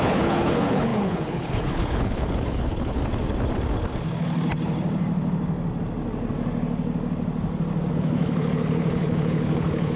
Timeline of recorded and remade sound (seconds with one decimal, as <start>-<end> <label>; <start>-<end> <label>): 0.0-3.0 remade; 3.0-7.9 recorded; 7.9-10.0 remade